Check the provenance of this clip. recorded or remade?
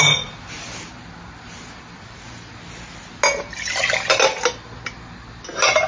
recorded